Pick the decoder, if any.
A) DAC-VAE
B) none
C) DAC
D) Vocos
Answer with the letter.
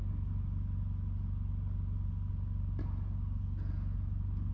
B